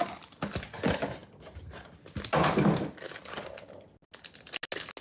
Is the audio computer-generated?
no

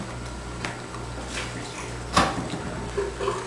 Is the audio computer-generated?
no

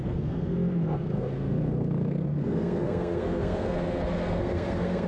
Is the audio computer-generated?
yes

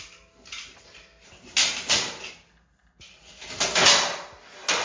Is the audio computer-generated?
no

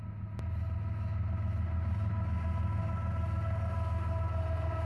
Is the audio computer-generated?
no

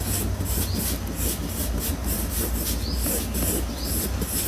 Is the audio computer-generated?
no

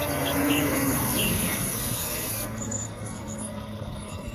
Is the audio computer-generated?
yes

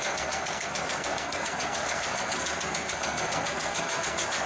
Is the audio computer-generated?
yes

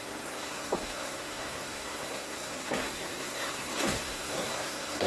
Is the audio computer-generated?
yes